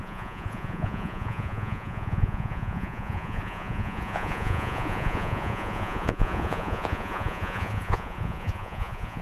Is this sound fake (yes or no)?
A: yes